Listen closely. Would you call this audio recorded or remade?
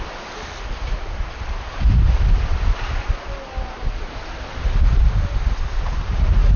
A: recorded